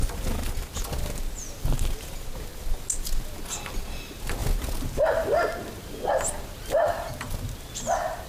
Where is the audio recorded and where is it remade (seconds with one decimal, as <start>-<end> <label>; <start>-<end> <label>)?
0.0-8.3 recorded